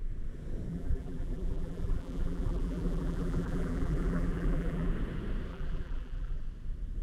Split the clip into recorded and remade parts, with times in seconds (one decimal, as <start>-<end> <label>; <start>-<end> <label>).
0.0-0.7 recorded; 0.7-4.9 remade; 4.9-5.5 recorded; 5.5-6.4 remade; 6.4-7.0 recorded